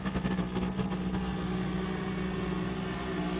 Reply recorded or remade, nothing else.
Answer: recorded